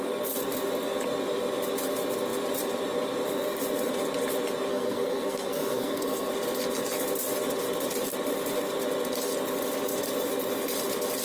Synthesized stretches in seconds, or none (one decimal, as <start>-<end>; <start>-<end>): 4.7-6.3